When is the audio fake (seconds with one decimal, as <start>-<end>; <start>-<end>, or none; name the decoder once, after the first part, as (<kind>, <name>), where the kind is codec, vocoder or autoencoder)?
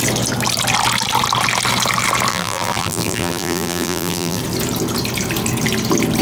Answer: 2.3-4.4 (vocoder, BigVGAN v2)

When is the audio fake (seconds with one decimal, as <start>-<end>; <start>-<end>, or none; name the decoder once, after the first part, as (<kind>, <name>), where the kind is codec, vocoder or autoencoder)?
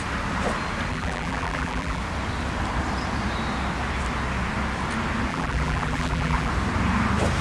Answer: 0.9-2.0 (vocoder, BigVGAN v2); 5.3-6.5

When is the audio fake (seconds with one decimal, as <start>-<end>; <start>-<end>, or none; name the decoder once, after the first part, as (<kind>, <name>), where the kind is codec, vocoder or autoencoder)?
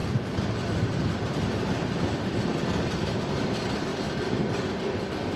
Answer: 0.0-3.2 (vocoder, BigVGAN v2)